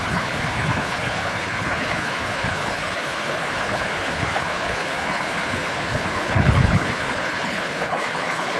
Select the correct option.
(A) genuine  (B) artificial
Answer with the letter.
B